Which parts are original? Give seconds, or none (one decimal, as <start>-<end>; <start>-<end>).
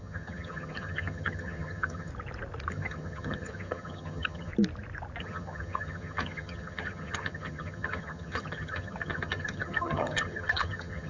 2.1-2.7; 4.5-5.2